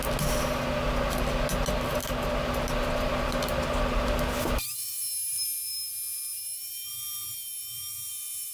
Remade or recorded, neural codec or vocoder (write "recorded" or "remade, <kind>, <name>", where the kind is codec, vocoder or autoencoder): recorded